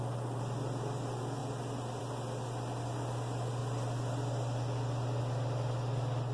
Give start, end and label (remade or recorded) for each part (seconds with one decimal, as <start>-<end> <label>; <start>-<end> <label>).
0.0-6.3 recorded